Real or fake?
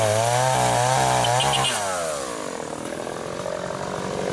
real